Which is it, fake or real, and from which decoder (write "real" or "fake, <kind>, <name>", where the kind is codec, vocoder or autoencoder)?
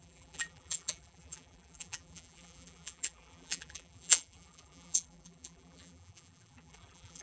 fake, vocoder, BigVGAN v2